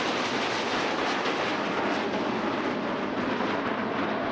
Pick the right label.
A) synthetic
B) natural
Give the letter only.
B